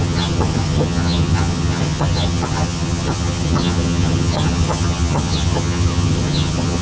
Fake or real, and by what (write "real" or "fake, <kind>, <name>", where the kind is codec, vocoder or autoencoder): fake, vocoder, HiFi-GAN